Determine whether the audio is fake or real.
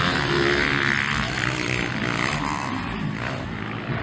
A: real